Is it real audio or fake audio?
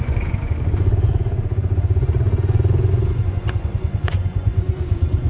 fake